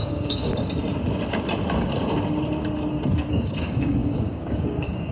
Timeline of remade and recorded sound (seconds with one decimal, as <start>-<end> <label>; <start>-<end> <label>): 0.0-0.5 remade; 0.5-3.3 recorded; 3.3-5.1 remade